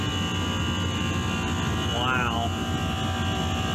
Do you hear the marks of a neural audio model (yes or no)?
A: no